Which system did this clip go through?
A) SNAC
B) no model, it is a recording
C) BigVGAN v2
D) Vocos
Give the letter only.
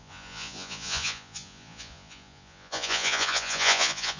D